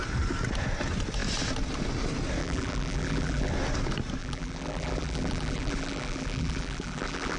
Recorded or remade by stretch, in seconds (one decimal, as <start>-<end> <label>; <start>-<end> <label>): 0.0-2.4 recorded; 2.4-3.5 remade; 3.5-4.2 recorded; 4.2-7.4 remade